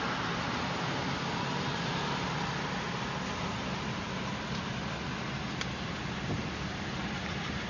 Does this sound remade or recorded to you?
recorded